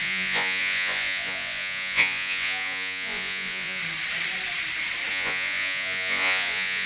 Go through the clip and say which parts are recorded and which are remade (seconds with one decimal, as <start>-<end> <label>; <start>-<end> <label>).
0.0-3.8 remade; 3.8-5.1 recorded; 5.1-6.9 remade